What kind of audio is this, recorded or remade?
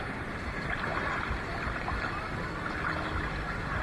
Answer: recorded